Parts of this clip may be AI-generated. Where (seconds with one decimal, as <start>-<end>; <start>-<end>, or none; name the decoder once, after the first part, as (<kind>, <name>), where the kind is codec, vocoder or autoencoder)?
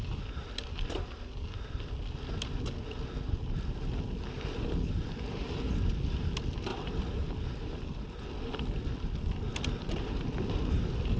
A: 6.7-7.6 (vocoder, BigVGAN v2)